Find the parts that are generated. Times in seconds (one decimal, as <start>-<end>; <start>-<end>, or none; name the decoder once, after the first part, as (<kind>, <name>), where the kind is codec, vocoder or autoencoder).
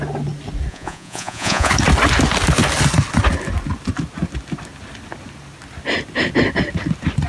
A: 0.7-1.7 (vocoder, Vocos)